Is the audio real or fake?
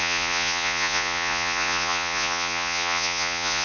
fake